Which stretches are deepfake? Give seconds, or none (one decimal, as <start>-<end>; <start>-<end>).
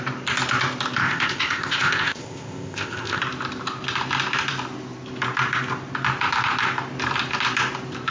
1.0-3.2